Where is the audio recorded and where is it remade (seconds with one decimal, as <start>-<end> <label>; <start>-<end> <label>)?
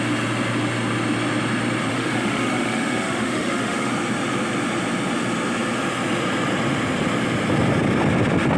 0.0-1.9 recorded; 1.9-3.9 remade; 3.9-8.6 recorded